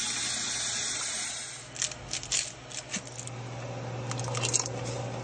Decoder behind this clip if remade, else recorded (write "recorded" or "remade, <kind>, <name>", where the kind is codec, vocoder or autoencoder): recorded